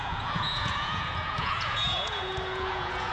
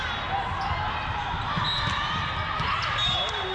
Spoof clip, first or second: first